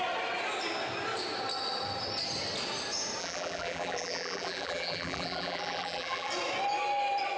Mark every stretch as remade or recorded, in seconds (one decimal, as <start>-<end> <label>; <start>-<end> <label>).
0.0-3.2 recorded; 3.2-6.3 remade; 6.3-7.4 recorded